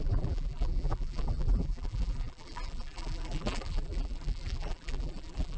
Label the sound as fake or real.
fake